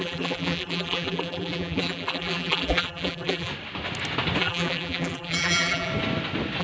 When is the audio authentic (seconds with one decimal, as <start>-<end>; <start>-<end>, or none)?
3.5-4.4; 5.9-6.6